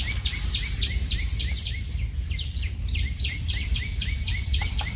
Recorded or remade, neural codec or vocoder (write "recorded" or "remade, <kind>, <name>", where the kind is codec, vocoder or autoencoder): recorded